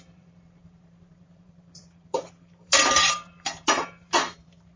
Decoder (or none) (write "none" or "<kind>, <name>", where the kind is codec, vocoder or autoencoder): vocoder, BigVGAN v2